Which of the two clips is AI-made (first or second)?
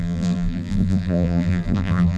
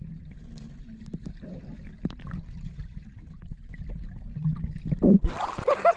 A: first